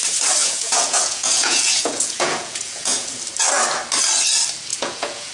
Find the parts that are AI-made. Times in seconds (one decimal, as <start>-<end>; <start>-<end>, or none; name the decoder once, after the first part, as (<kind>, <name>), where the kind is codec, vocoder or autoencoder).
0.4-3.2 (vocoder, Vocos); 4.7-5.3